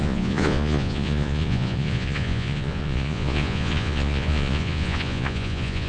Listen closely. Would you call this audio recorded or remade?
remade